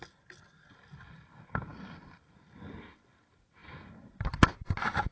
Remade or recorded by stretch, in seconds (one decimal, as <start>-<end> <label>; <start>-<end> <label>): 0.0-5.1 recorded